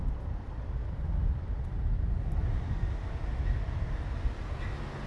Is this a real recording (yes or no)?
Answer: yes